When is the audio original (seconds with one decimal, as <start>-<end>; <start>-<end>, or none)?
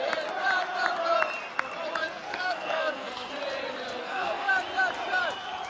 0.0-2.0; 3.3-4.0; 4.5-5.7